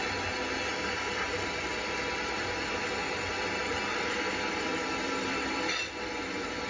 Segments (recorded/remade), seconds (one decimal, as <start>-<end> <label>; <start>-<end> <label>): 0.0-6.7 recorded